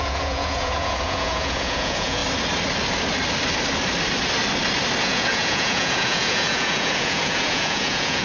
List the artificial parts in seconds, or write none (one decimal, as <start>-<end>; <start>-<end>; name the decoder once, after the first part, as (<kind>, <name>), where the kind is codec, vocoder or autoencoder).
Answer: 0.0-2.2 (vocoder, Vocos); 5.0-8.2